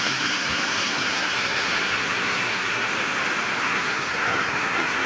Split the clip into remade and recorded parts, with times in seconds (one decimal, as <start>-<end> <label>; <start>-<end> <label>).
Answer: 0.0-2.9 remade; 2.9-3.6 recorded; 3.6-5.1 remade

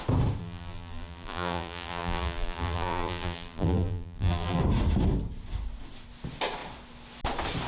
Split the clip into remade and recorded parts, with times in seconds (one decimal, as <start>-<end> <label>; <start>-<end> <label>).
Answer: 0.0-0.4 recorded; 0.4-4.6 remade; 4.6-7.7 recorded

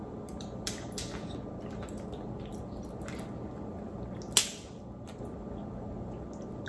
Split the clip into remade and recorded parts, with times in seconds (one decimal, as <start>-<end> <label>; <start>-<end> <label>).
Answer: 0.0-6.7 recorded

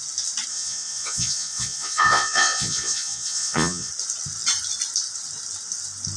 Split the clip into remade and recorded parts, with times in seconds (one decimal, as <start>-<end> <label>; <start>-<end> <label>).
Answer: 0.0-0.5 recorded; 0.5-3.9 remade; 3.9-6.2 recorded

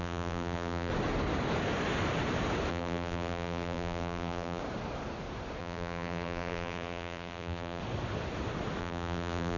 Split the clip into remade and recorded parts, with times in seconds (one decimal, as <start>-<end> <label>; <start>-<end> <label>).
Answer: 0.0-0.9 remade; 0.9-2.7 recorded; 2.7-4.6 remade; 4.6-5.6 recorded; 5.6-7.8 remade; 7.8-8.8 recorded; 8.8-9.6 remade

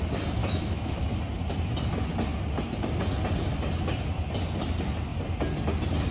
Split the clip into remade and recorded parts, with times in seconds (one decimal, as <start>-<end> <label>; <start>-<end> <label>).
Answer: 0.0-0.4 recorded; 0.4-1.0 remade; 1.0-6.1 recorded